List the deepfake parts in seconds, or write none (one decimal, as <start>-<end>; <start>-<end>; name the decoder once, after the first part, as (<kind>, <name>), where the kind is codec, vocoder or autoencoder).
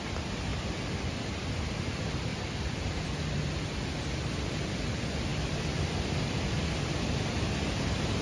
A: 0.5-1.5 (vocoder, BigVGAN v2); 2.3-3.0; 5.3-6.2